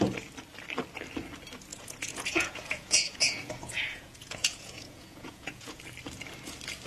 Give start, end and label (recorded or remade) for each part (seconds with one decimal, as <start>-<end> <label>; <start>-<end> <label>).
0.0-1.7 recorded; 1.7-5.8 remade; 5.8-6.9 recorded